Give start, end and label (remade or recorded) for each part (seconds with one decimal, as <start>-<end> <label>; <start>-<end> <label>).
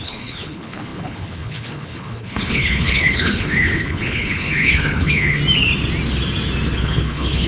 0.0-5.4 remade; 5.4-6.8 recorded; 6.8-7.5 remade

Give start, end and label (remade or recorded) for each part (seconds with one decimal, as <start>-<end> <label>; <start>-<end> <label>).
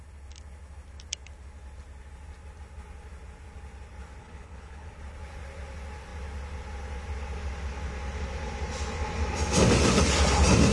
0.0-4.2 recorded; 4.2-4.9 remade; 4.9-10.7 recorded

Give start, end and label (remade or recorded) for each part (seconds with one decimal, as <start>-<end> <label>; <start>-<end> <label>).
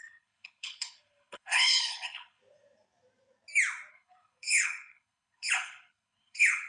0.0-2.4 remade; 2.4-3.9 recorded; 3.9-6.7 remade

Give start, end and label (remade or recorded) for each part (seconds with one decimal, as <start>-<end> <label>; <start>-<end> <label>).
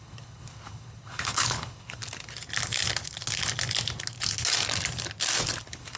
0.0-2.0 remade; 2.0-5.6 recorded; 5.6-6.0 remade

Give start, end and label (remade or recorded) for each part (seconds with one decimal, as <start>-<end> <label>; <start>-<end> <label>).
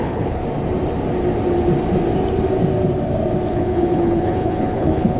0.0-0.4 remade; 0.4-3.5 recorded; 3.5-5.2 remade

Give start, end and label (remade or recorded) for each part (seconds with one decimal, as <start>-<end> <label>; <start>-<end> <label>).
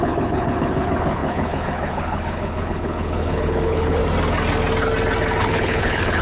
0.0-4.0 remade; 4.0-5.4 recorded; 5.4-6.2 remade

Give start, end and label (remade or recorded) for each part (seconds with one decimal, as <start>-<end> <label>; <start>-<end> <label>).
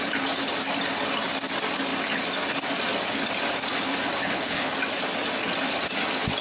0.0-4.2 recorded; 4.2-4.7 remade; 4.7-6.4 recorded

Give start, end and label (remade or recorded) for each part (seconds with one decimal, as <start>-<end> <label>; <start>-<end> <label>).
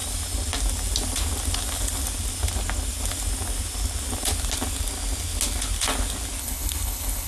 0.0-6.4 recorded; 6.4-7.3 remade